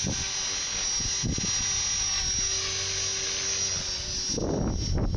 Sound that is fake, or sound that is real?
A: real